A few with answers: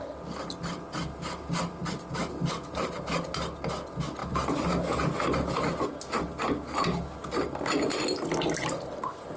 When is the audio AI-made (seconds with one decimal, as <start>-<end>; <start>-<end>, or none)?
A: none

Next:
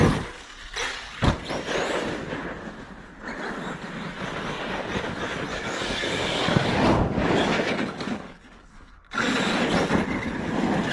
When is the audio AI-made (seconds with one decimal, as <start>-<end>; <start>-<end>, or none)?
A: 5.5-9.5

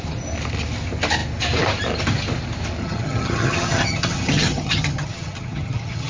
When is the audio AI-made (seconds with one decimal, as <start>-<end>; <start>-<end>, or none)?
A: 2.8-6.1

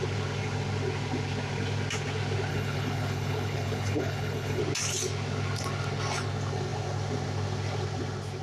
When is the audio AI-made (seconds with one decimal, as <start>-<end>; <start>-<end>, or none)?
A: 2.5-4.6

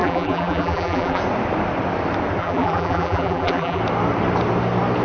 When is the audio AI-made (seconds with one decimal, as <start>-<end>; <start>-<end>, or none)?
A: 0.0-1.2; 2.4-3.8

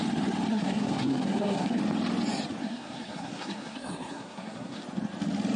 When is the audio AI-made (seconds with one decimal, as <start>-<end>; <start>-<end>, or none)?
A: 0.5-1.8; 2.6-4.8

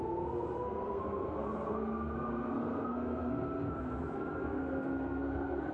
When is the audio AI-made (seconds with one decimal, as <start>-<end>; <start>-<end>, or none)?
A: 0.0-5.7